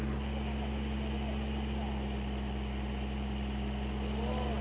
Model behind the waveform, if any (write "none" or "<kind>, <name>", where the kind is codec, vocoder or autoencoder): none